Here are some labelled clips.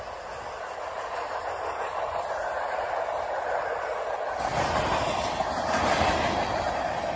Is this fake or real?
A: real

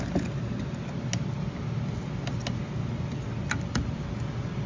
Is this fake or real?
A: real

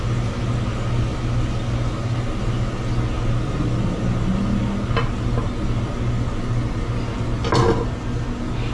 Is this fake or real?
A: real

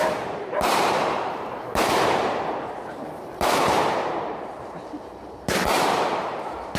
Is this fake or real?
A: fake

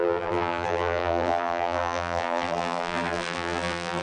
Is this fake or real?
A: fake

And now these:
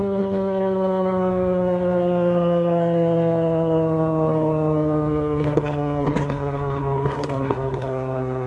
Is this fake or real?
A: fake